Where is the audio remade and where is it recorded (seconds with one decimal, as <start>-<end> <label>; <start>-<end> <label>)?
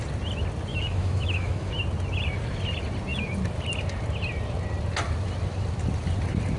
0.0-0.7 recorded; 0.7-1.7 remade; 1.7-6.6 recorded